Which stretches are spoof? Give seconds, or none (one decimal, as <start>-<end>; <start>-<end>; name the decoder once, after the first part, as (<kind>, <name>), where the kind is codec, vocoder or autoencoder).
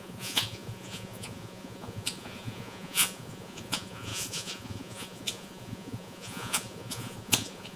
0.0-7.8 (vocoder, Vocos)